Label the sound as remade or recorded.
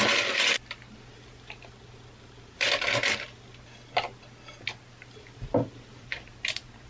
recorded